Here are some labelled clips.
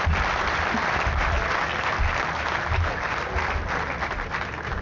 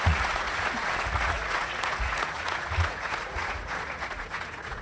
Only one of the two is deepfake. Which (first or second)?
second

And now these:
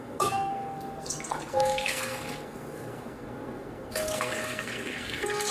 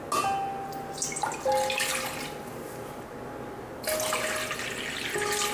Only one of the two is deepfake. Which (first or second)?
first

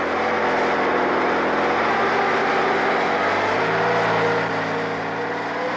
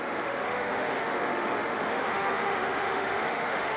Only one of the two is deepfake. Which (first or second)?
second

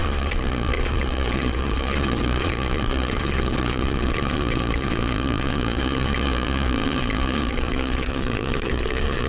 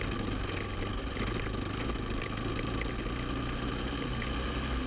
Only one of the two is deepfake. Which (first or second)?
first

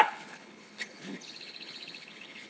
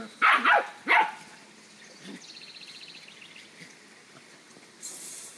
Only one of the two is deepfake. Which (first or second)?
first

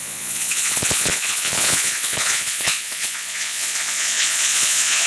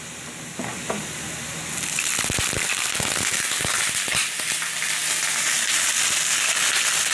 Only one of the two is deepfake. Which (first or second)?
first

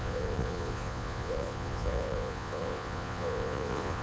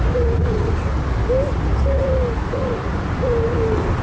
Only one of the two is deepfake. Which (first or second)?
first